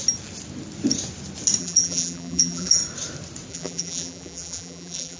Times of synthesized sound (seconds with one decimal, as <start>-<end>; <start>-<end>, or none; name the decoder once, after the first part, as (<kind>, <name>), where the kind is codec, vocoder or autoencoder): 1.6-2.8 (vocoder, BigVGAN v2); 3.5-5.2